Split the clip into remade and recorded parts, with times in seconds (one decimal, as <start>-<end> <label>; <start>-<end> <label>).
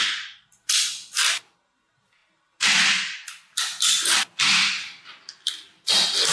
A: 0.0-6.3 recorded